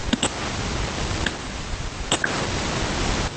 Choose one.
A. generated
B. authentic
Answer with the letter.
B